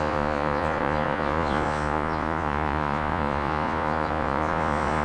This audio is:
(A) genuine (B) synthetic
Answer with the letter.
B